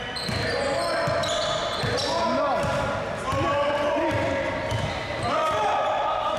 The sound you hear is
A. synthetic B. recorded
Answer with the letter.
B